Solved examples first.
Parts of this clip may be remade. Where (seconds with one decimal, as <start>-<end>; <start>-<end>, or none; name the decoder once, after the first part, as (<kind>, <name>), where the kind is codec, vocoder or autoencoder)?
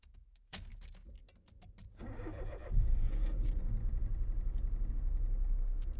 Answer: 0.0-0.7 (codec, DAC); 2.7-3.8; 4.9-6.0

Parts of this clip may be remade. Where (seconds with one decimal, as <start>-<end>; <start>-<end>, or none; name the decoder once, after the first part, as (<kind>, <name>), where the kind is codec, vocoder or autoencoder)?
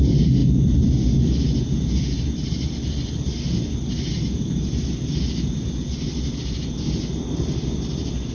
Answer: none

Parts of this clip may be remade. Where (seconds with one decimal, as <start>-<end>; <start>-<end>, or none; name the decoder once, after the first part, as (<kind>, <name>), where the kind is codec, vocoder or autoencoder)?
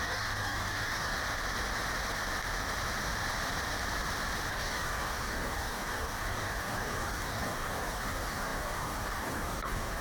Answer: 0.0-1.2 (codec, DAC); 4.5-10.0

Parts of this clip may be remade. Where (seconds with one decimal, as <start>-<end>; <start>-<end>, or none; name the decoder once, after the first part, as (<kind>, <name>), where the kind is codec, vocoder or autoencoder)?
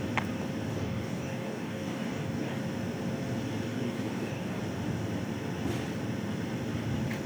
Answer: 0.7-2.6 (codec, DAC); 3.7-4.6